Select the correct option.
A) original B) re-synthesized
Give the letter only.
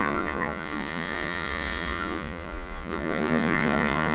B